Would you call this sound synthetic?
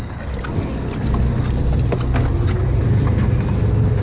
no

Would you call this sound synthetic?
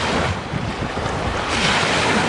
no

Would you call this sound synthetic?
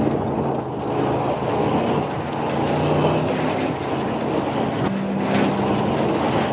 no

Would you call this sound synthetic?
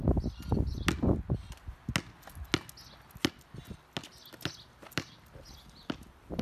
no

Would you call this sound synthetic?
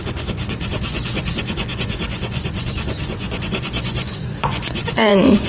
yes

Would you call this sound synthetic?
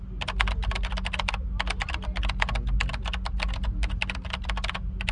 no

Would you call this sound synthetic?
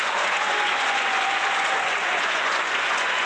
yes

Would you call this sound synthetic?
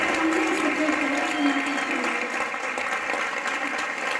no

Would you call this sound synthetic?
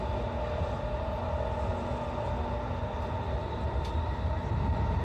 no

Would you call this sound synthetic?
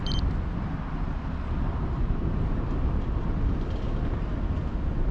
no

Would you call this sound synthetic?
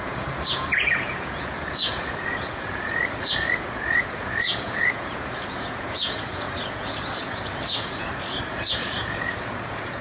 yes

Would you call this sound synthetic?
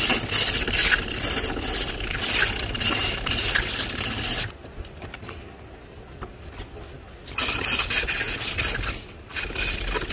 no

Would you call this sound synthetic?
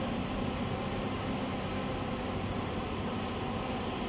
no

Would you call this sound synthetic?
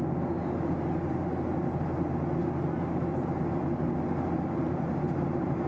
no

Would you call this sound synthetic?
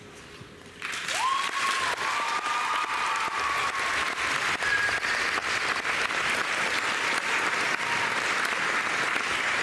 no